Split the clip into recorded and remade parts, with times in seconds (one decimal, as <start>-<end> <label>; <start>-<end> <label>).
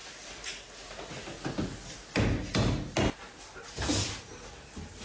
0.0-0.5 remade; 0.5-5.0 recorded